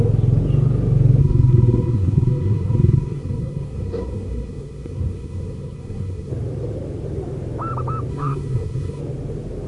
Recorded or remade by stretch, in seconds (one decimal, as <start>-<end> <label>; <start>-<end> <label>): 0.0-1.2 recorded; 1.2-6.3 remade; 6.3-8.1 recorded; 8.1-9.0 remade; 9.0-9.7 recorded